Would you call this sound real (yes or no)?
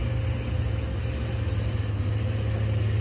yes